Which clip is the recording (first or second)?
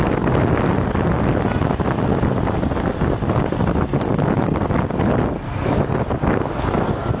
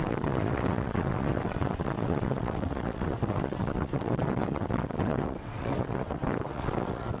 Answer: first